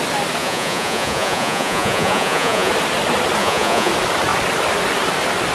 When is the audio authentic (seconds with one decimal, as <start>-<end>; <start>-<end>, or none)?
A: 0.0-0.4; 2.7-3.4; 3.9-5.5